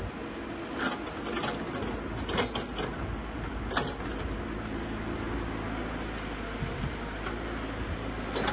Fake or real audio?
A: real